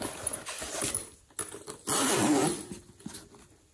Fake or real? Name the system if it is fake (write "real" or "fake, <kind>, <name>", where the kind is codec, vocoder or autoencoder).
real